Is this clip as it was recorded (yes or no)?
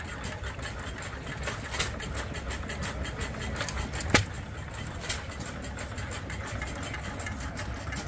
yes